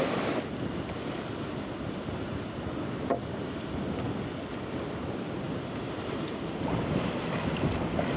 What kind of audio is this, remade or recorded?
recorded